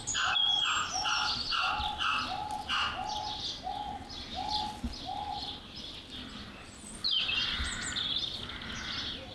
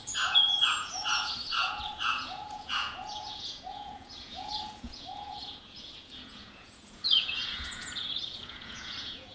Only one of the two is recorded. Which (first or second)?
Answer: first